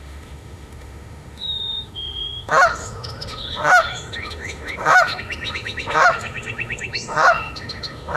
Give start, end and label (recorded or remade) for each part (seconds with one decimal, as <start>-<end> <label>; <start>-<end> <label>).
0.0-8.2 remade